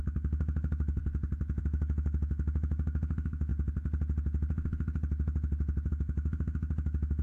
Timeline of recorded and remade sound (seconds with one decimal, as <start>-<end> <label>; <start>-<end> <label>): 0.0-1.0 remade; 1.0-1.6 recorded; 1.6-3.5 remade; 3.5-5.9 recorded; 5.9-7.2 remade